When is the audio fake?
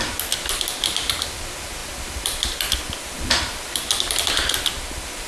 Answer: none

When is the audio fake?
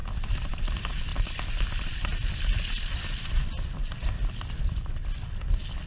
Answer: none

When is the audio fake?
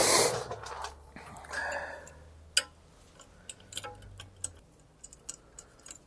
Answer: 1.1-1.6 (vocoder, BigVGAN v2); 5.3-6.1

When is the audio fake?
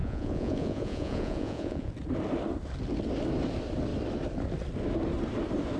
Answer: 0.0-1.9 (vocoder, Vocos)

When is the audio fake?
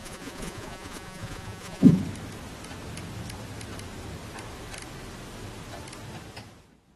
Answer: 0.0-2.0 (vocoder, Vocos)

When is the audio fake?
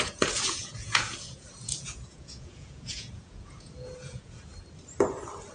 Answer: 0.0-4.5 (vocoder, Vocos)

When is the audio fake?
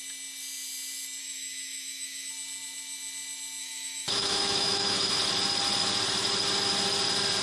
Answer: 1.2-2.3 (autoencoder, DAC-VAE); 3.6-5.1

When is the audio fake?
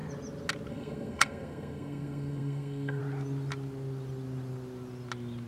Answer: 0.7-3.0 (codec, SNAC)